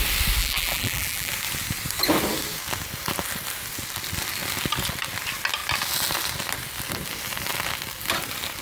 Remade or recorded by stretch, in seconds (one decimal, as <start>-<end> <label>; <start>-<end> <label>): 0.0-0.4 recorded; 0.4-1.3 remade; 1.3-8.6 recorded